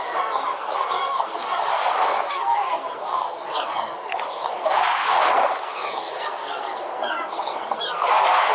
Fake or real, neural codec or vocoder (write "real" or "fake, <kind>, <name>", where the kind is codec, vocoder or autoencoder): fake, codec, SNAC